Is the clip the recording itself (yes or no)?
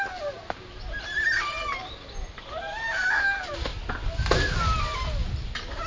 yes